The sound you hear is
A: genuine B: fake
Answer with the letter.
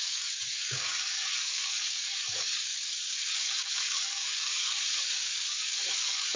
B